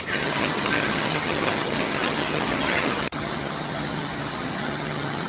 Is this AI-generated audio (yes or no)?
yes